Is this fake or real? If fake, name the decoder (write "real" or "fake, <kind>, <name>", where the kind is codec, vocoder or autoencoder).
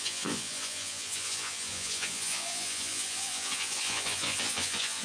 fake, vocoder, Vocos